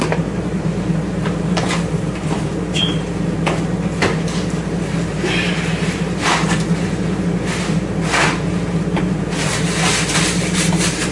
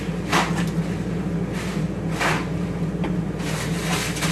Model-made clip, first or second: first